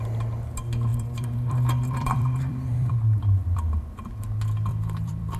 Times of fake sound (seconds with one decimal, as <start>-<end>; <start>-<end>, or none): 0.9-4.1; 4.7-5.4

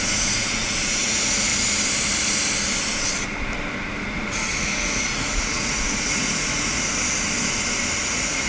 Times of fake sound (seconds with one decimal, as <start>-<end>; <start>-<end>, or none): 0.0-1.5; 4.1-6.9; 8.0-8.5